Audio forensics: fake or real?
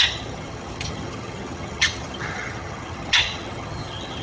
fake